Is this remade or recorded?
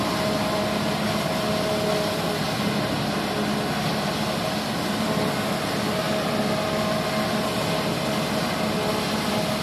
recorded